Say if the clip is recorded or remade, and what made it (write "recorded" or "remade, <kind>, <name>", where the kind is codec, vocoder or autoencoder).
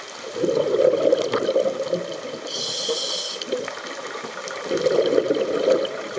recorded